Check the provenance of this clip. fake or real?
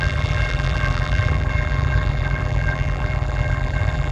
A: fake